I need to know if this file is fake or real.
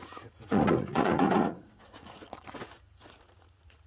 fake